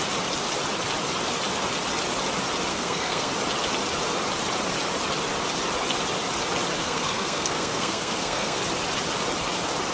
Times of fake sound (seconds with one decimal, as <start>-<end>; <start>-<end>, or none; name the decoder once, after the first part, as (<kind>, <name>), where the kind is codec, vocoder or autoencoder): 2.7-3.3 (codec, SNAC); 6.8-8.6